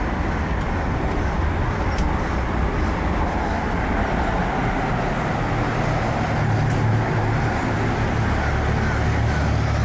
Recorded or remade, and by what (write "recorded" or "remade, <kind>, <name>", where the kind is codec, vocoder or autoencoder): recorded